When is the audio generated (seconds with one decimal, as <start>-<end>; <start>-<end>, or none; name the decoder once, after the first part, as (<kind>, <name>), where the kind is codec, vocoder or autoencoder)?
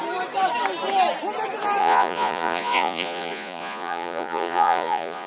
1.8-5.3 (vocoder, Vocos)